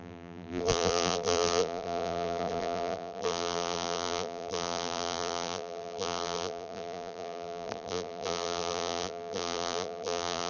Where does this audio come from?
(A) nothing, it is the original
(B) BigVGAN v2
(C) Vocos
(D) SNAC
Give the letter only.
B